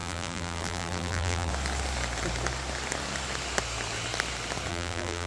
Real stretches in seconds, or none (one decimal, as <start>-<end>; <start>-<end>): 1.5-4.7